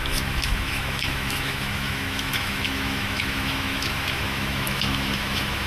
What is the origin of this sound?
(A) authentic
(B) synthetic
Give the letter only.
B